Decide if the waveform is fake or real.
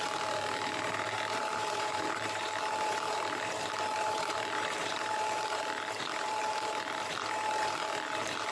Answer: fake